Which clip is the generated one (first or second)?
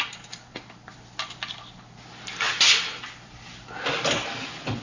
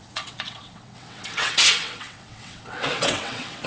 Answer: second